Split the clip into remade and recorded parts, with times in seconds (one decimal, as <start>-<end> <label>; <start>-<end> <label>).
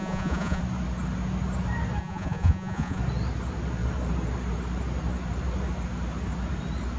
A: 0.0-0.6 remade; 0.6-2.0 recorded; 2.0-3.0 remade; 3.0-7.0 recorded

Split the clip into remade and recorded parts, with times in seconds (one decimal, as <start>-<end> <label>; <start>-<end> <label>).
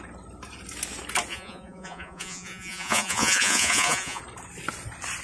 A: 0.0-1.3 recorded; 1.3-4.2 remade; 4.2-5.2 recorded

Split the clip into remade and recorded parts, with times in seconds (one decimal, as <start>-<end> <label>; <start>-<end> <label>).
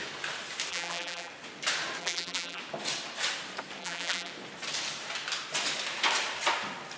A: 0.0-0.7 recorded; 0.7-1.3 remade; 1.3-2.0 recorded; 2.0-2.6 remade; 2.6-3.8 recorded; 3.8-4.3 remade; 4.3-7.0 recorded